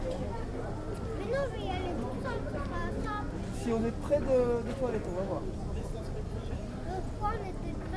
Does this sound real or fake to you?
real